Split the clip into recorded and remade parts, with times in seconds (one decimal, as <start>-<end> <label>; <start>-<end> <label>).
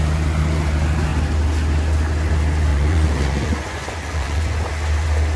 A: 0.0-2.7 recorded; 2.7-4.7 remade; 4.7-5.4 recorded